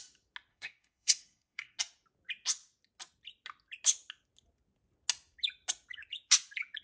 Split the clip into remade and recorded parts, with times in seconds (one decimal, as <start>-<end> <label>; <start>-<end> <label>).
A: 0.0-0.5 recorded; 0.5-1.8 remade; 1.8-6.8 recorded